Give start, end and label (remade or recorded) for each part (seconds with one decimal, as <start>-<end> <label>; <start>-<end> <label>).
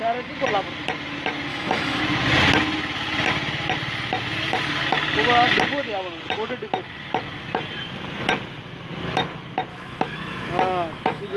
0.0-1.5 recorded; 1.5-2.0 remade; 2.0-9.7 recorded; 9.7-11.4 remade